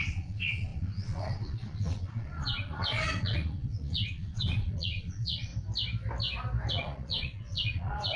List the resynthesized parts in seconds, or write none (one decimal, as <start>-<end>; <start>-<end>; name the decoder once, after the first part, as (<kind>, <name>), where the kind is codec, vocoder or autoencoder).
0.0-5.5 (vocoder, Vocos); 6.7-8.2